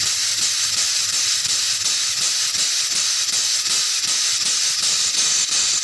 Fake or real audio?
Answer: real